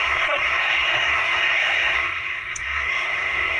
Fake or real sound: fake